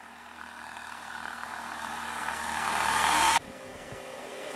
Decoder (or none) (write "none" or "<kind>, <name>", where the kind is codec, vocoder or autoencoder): codec, SNAC